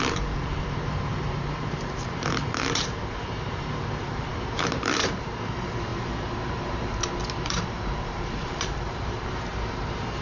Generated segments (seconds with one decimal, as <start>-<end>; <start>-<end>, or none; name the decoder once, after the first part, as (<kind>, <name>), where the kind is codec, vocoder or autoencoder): 0.0-10.2 (vocoder, BigVGAN v2)